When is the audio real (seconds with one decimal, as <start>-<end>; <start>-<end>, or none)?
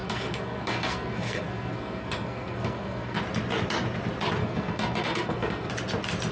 3.2-4.4; 5.7-6.3